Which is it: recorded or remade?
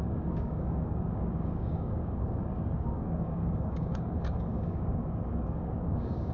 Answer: remade